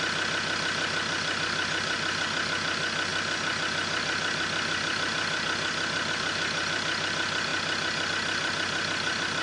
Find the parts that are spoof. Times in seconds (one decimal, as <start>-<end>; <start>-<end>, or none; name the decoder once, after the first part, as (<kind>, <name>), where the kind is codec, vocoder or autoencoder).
none